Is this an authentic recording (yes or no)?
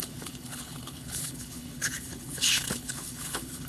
no